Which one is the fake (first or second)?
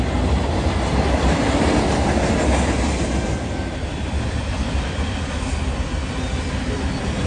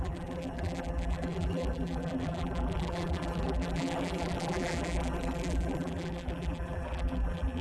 second